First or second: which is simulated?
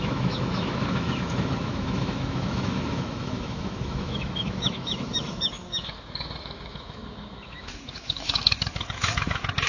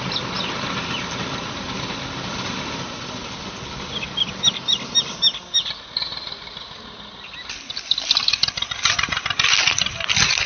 first